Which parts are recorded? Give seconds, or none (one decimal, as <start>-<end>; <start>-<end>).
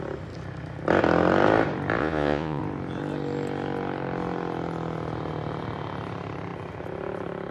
0.0-2.0; 2.6-7.5